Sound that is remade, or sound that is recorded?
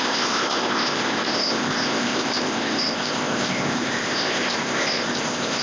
remade